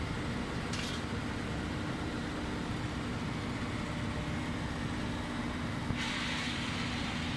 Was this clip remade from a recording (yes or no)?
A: no